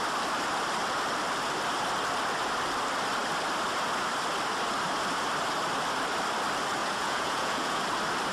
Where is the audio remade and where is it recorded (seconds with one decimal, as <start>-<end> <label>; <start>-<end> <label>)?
0.0-6.8 recorded; 6.8-7.8 remade; 7.8-8.3 recorded